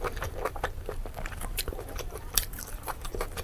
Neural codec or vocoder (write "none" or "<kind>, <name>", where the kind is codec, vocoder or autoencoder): vocoder, BigVGAN v2